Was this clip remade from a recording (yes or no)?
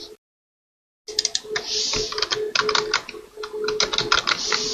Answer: no